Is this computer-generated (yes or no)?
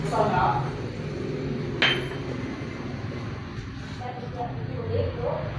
no